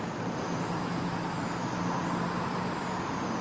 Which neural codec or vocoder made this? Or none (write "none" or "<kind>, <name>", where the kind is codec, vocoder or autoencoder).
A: none